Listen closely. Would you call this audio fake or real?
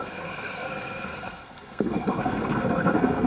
fake